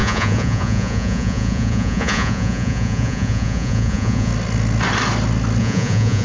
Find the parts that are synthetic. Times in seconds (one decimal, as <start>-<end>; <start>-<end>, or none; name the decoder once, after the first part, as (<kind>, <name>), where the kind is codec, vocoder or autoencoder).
0.0-4.3 (vocoder, Vocos); 5.6-6.2